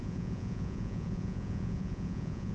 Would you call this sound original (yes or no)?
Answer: no